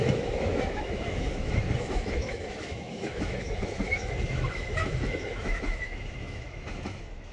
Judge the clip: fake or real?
fake